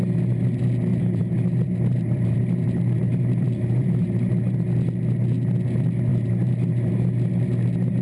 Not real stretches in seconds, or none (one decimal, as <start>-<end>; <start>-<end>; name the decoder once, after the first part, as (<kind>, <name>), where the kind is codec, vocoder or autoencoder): 0.9-4.3 (vocoder, BigVGAN v2); 6.1-7.0